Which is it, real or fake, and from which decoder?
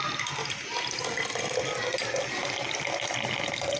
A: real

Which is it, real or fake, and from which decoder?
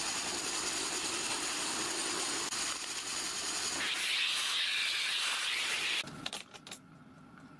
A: real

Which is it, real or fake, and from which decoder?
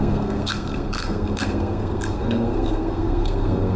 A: fake, codec, SNAC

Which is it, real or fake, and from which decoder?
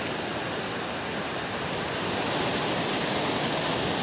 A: real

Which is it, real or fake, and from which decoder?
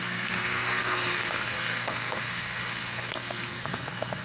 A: fake, codec, SNAC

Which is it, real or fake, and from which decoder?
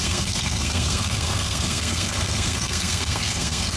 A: fake, codec, SNAC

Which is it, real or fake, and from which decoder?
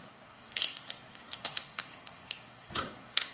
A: fake, codec, SNAC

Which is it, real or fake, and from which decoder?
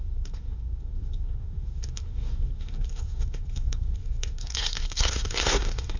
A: fake, codec, SNAC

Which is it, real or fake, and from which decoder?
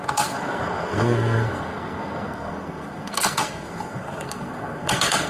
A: fake, codec, SNAC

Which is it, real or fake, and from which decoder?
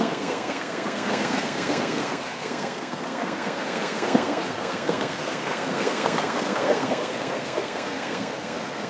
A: fake, codec, SNAC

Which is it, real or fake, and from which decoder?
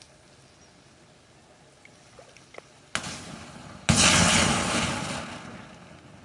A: real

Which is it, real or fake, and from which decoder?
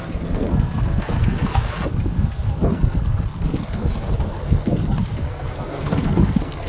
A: fake, codec, SNAC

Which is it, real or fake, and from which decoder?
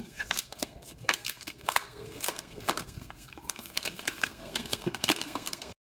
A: fake, codec, SNAC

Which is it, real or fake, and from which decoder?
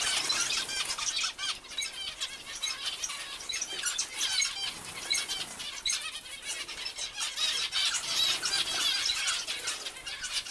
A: real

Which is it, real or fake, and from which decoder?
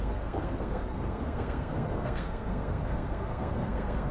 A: fake, codec, SNAC